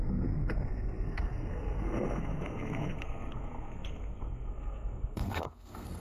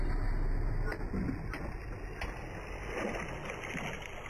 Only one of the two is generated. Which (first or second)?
first